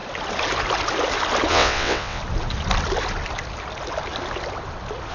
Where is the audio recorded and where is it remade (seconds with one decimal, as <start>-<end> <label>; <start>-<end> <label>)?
0.0-1.5 recorded; 1.5-2.2 remade; 2.2-5.1 recorded